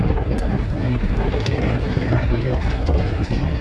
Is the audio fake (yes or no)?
yes